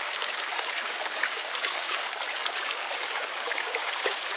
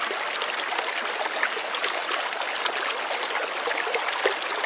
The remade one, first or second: first